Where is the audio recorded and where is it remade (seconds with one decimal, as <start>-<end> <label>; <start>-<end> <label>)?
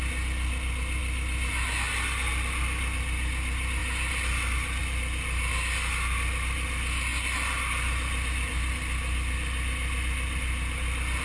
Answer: 0.0-11.2 recorded